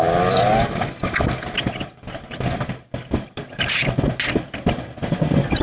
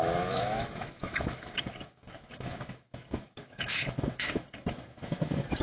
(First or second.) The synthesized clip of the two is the second